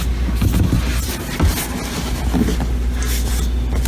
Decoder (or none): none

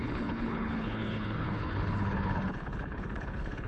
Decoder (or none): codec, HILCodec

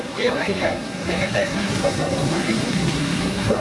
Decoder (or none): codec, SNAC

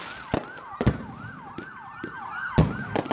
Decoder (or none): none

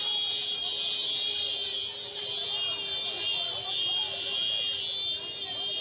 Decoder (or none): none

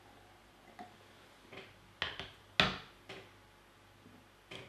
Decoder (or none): none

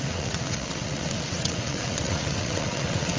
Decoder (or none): vocoder, WaveNeXt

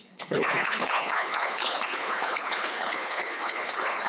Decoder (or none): codec, HILCodec